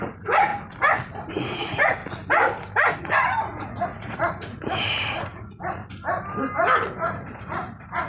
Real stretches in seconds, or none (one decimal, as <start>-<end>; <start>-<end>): 0.5-1.3; 2.0-3.0; 5.8-6.9